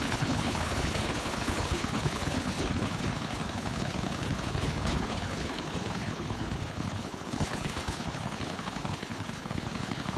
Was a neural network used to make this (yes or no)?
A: yes